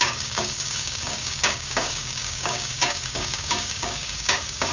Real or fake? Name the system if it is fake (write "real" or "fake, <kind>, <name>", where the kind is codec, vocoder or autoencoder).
fake, codec, DAC